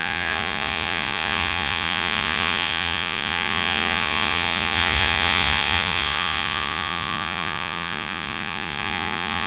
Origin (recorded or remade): remade